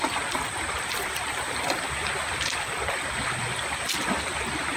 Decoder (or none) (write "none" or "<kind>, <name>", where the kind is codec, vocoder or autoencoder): vocoder, BigVGAN v2